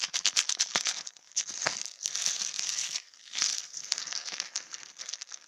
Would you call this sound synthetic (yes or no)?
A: yes